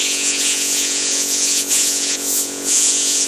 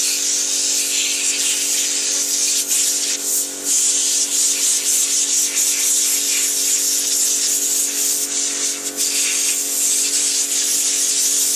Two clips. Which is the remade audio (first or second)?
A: first